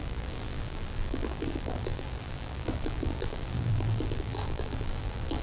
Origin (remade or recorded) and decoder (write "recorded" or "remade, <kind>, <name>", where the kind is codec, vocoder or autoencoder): remade, vocoder, BigVGAN v2